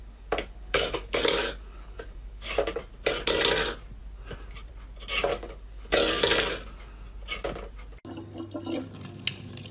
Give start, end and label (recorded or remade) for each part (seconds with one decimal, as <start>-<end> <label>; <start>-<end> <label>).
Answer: 0.0-2.8 remade; 2.8-5.3 recorded; 5.3-6.3 remade; 6.3-9.7 recorded